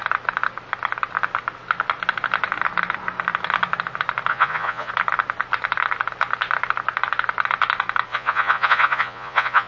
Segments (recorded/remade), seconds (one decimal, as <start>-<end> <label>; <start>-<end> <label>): 0.0-4.3 recorded; 4.3-4.9 remade; 4.9-8.1 recorded; 8.1-9.7 remade